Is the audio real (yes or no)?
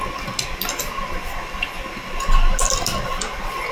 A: yes